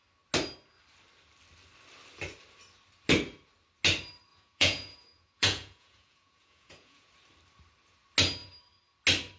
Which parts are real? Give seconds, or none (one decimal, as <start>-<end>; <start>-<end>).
0.0-4.3; 7.1-9.4